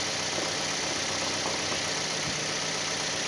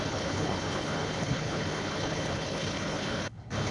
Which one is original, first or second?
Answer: first